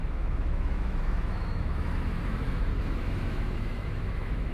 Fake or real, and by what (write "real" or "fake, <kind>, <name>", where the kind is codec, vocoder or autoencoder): fake, autoencoder, DAC-VAE